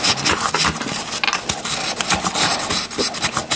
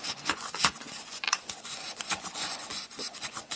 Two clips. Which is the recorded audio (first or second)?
first